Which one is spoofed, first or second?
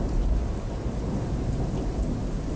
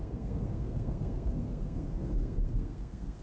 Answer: second